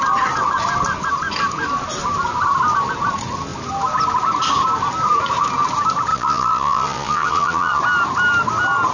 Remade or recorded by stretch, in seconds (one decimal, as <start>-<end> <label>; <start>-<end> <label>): 0.0-6.1 recorded; 6.1-7.8 remade; 7.8-8.9 recorded